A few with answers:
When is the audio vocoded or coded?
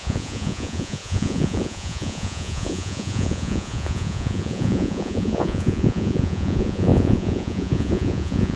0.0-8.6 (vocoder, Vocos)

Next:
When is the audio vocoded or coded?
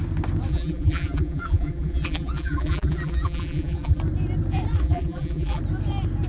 0.5-4.0 (vocoder, BigVGAN v2); 4.7-5.6